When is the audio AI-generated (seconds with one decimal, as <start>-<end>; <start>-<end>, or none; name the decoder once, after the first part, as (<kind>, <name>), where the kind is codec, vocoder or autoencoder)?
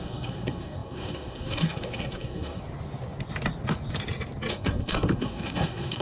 0.0-2.6 (codec, SNAC); 4.5-6.0